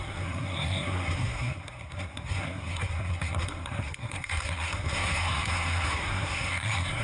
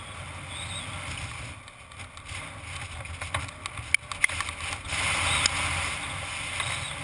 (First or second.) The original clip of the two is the second